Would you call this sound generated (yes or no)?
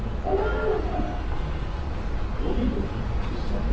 no